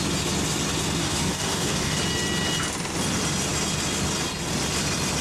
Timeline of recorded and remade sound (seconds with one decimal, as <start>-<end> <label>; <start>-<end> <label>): 0.0-1.0 recorded; 1.0-2.0 remade; 2.0-5.2 recorded